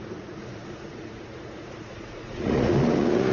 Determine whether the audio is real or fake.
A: fake